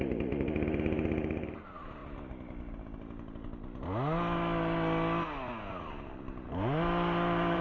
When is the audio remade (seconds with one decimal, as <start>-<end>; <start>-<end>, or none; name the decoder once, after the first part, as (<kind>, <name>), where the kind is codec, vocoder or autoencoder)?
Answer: 0.0-2.0 (vocoder, BigVGAN v2); 6.2-7.6